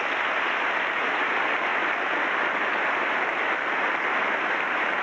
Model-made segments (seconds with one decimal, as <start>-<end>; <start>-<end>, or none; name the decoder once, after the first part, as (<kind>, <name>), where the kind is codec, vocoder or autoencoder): none